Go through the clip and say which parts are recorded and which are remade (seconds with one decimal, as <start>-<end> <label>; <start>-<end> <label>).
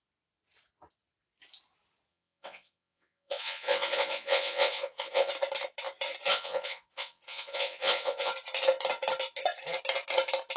0.0-2.1 recorded; 2.1-5.3 remade; 5.3-6.3 recorded; 6.3-8.3 remade; 8.3-10.6 recorded